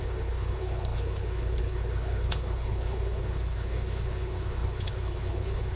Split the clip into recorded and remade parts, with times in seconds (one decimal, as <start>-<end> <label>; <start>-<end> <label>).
0.0-5.8 remade